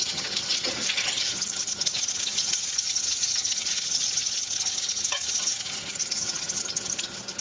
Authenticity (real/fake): fake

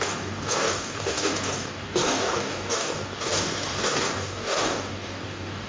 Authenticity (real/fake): fake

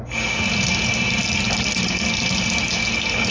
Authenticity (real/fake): real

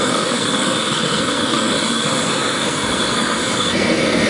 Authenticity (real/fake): fake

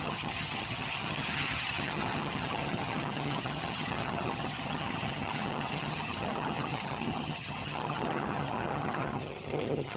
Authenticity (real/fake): fake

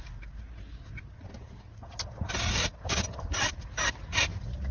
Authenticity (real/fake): real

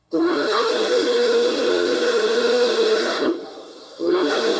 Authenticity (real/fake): fake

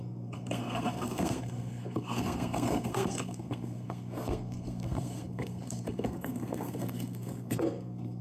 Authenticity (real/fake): fake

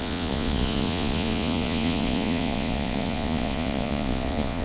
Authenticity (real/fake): fake